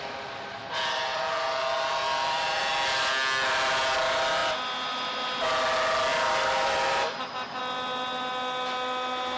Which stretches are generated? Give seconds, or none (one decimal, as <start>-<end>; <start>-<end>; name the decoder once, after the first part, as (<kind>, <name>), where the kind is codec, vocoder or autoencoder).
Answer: 1.1-2.7 (vocoder, BigVGAN v2); 6.1-7.6